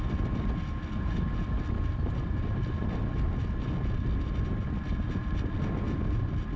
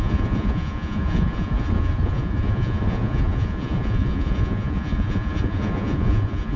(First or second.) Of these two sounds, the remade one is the second